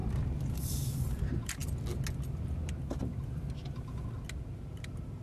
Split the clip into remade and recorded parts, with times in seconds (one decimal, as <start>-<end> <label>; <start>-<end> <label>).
0.0-0.5 recorded; 0.5-1.6 remade; 1.6-4.5 recorded; 4.5-5.2 remade